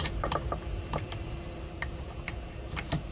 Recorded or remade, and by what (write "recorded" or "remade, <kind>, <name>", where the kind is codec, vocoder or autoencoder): remade, vocoder, BigVGAN v2